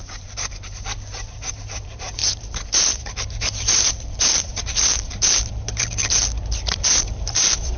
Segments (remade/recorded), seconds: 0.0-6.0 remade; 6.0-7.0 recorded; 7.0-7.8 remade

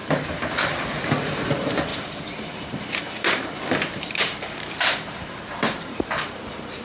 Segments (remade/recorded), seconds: 0.0-1.2 recorded; 1.2-6.8 remade

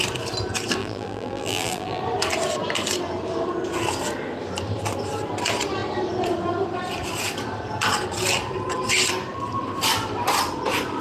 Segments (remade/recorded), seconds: 0.0-0.8 recorded; 0.8-2.0 remade; 2.0-11.0 recorded

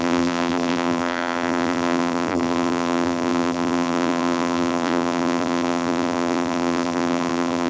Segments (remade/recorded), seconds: 0.0-7.7 remade

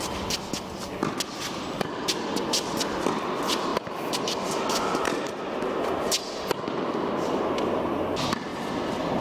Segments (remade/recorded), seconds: 0.0-9.2 recorded

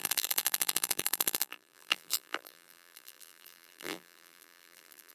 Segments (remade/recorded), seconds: 0.0-5.1 remade